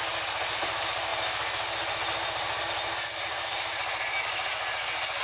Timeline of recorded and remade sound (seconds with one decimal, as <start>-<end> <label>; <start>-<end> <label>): 0.0-5.2 recorded